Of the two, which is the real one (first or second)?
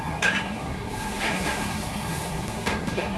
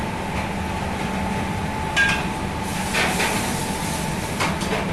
second